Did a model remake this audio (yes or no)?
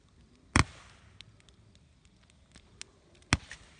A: no